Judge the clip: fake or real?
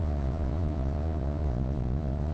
fake